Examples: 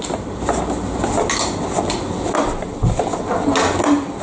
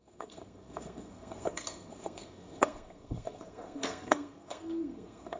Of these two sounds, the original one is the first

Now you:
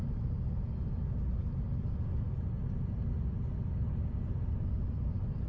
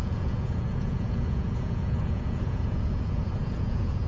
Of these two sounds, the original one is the first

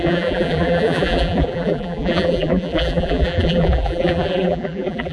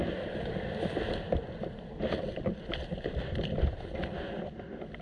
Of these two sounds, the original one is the second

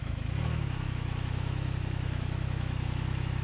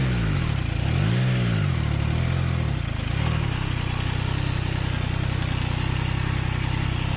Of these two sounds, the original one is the second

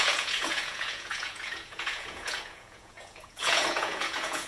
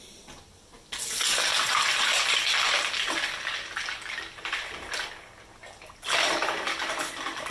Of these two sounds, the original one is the second